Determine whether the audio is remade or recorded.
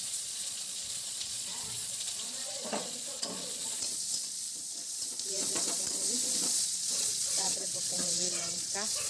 remade